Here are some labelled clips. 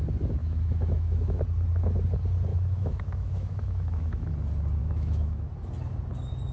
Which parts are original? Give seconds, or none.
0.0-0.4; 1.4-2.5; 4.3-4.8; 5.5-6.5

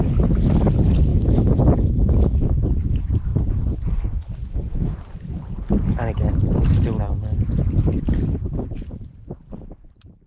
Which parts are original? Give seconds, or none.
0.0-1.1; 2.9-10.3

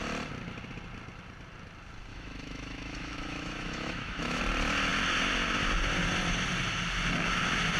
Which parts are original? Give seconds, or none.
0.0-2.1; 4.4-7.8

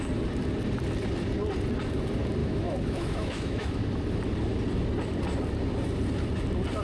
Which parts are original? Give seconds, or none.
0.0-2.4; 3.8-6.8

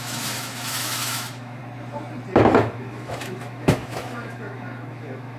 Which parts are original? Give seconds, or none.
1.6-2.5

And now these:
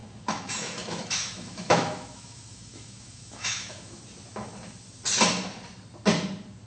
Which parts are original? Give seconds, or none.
4.0-6.7